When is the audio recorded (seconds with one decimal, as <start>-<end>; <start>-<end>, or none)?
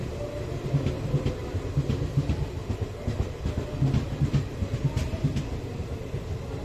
0.0-6.6